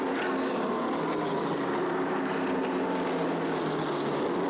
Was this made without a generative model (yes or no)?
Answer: yes